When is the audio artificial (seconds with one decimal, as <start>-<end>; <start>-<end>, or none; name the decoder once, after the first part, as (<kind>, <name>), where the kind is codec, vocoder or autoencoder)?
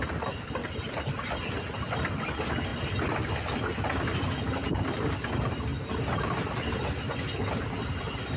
2.7-3.3 (vocoder, BigVGAN v2)